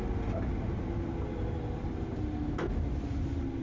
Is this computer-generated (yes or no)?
no